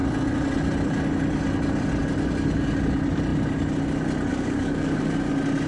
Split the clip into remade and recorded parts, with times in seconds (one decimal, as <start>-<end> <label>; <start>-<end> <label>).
0.0-4.3 recorded; 4.3-5.3 remade; 5.3-5.7 recorded